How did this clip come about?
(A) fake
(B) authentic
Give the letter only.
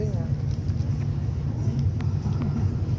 B